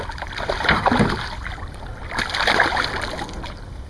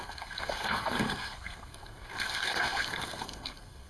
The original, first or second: first